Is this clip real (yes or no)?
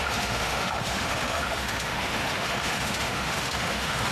no